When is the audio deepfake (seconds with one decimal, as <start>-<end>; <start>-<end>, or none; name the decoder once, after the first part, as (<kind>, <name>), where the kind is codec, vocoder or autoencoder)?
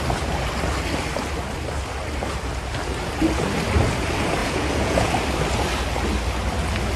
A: 4.4-5.1 (vocoder, Vocos)